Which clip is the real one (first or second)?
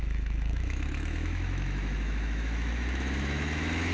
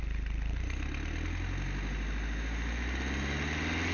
second